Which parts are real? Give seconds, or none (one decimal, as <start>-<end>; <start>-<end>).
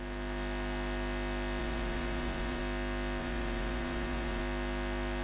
0.0-1.6; 2.6-3.2; 4.4-5.2